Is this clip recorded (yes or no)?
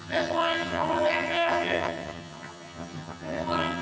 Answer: no